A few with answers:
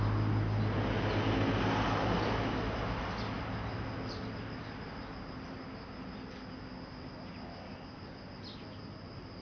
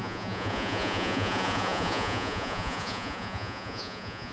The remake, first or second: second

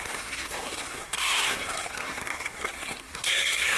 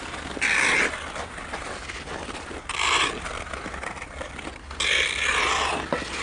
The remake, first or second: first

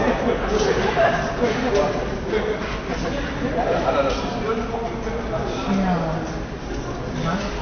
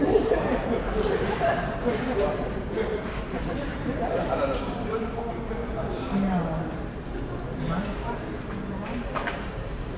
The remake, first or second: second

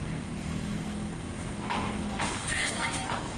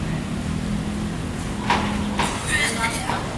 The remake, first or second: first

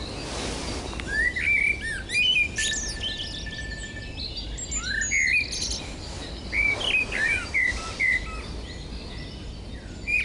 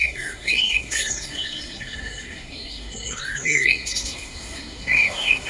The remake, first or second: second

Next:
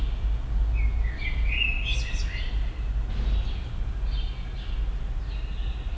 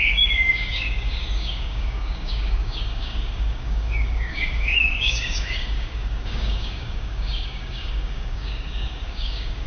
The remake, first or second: second